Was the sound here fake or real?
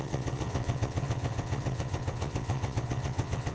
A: fake